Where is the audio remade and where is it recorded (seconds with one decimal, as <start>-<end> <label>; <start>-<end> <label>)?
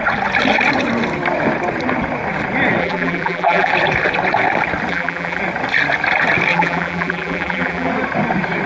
0.0-2.8 recorded; 2.8-3.7 remade; 3.7-4.9 recorded; 4.9-5.4 remade; 5.4-6.5 recorded; 6.5-7.9 remade; 7.9-8.7 recorded